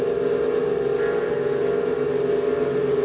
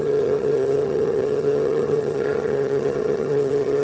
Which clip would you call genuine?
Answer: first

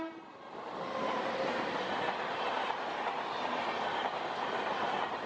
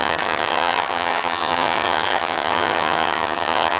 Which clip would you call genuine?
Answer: first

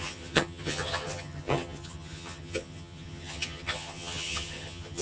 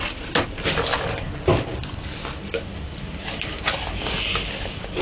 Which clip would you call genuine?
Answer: second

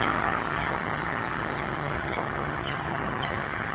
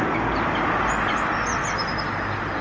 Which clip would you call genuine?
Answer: second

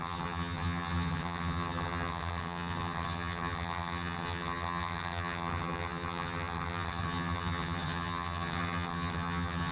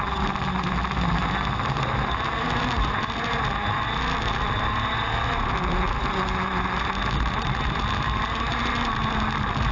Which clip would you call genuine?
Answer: second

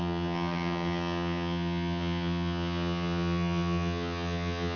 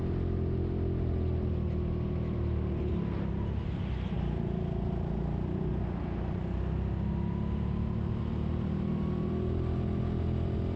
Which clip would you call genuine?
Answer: second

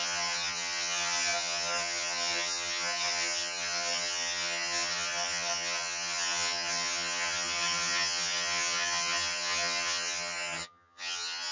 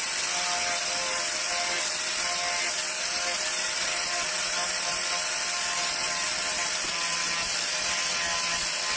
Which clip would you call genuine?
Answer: second